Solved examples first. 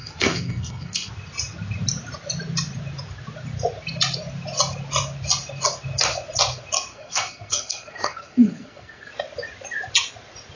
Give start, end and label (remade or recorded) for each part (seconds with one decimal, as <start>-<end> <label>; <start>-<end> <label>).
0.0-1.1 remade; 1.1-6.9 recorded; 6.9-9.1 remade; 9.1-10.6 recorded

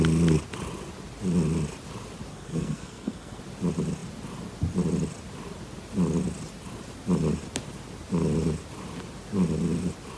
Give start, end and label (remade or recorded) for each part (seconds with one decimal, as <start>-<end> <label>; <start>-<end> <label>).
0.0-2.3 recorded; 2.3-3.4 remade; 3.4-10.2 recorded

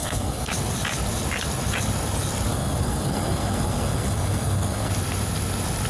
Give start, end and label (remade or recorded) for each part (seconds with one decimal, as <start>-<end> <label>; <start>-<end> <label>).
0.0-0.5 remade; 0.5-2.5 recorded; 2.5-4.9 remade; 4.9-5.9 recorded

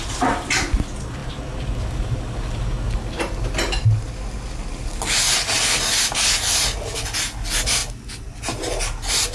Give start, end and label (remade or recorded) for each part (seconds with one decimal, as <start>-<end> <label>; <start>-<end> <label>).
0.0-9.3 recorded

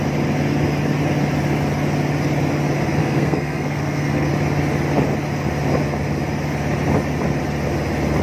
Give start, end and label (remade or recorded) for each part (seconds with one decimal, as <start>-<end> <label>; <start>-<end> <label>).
0.0-3.0 recorded; 3.0-4.3 remade; 4.3-8.2 recorded